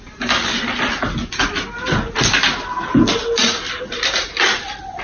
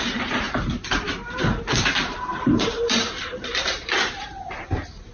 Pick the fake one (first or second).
second